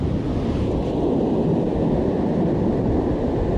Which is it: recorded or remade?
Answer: recorded